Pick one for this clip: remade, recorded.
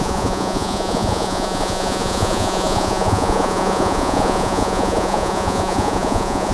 remade